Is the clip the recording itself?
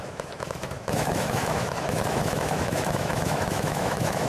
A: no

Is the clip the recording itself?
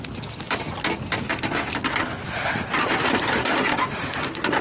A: yes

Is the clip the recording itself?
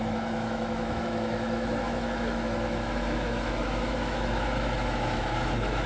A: no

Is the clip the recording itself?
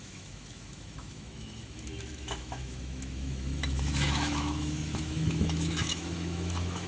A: no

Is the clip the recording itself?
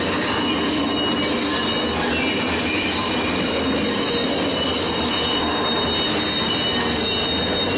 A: yes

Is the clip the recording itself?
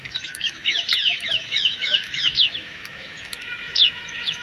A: no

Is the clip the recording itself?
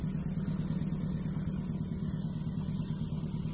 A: yes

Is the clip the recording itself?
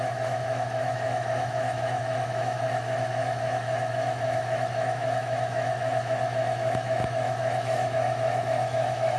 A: no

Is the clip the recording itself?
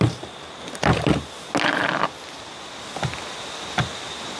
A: yes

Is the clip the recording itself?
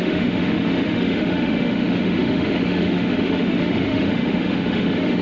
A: no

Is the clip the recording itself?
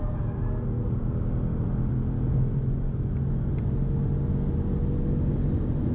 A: yes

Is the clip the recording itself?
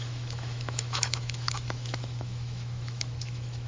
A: no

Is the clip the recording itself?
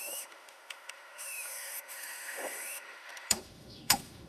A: no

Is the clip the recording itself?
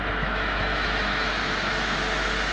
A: no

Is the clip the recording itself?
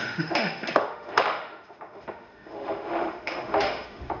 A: no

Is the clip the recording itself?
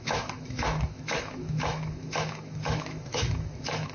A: no